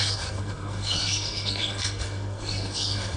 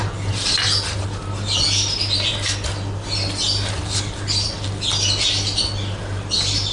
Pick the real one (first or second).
second